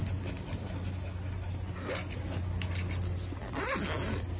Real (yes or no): yes